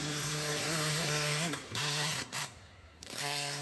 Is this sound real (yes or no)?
no